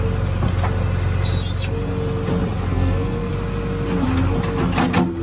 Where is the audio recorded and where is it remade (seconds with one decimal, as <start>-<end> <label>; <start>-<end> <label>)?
0.0-2.7 recorded; 2.7-3.3 remade; 3.3-5.2 recorded